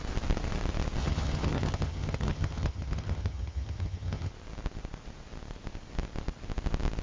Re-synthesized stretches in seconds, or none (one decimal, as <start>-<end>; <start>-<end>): 1.0-4.3